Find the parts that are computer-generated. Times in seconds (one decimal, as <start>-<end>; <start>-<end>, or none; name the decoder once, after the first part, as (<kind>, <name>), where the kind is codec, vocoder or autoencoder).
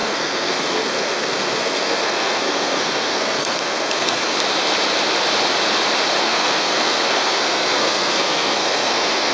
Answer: 0.0-4.2 (codec, SNAC); 6.2-9.3